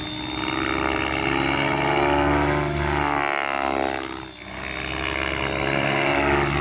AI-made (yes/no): no